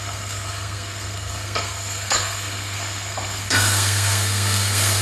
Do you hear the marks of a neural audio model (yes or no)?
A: yes